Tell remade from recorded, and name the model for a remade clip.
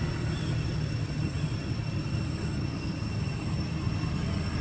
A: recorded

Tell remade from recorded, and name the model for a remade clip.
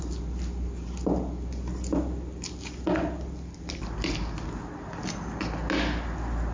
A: recorded